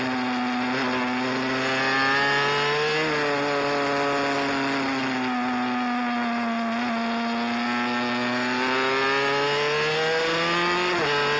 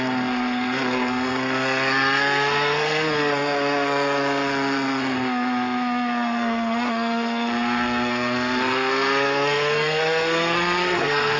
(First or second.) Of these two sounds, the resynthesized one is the second